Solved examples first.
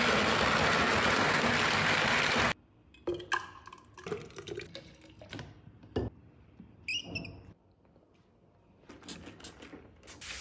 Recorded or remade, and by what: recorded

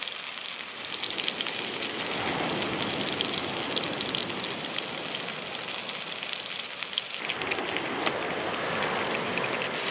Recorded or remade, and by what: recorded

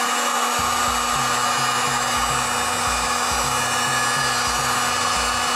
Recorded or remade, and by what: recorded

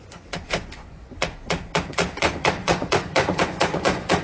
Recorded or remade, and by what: remade, vocoder, Vocos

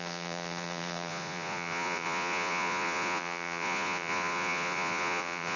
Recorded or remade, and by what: remade, vocoder, Vocos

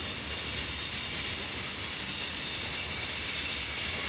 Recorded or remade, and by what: recorded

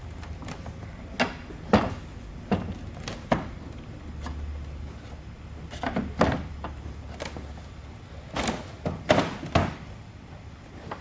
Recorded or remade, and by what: recorded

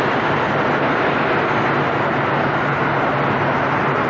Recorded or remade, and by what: recorded